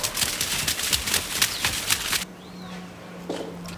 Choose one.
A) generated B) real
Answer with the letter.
B